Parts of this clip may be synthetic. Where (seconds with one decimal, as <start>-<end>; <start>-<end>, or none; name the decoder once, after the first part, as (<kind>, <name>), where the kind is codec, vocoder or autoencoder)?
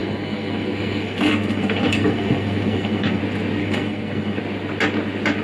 0.0-3.2 (codec, SNAC); 3.6-4.4